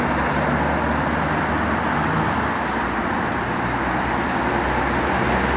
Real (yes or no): yes